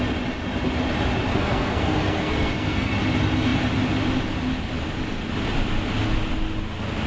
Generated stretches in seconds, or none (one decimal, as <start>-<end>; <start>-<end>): 1.3-2.9